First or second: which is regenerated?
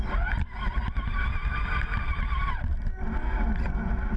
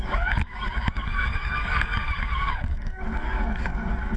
second